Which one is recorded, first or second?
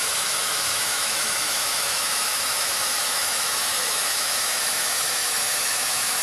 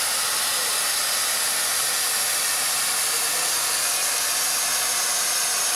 second